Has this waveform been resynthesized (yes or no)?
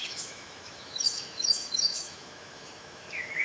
yes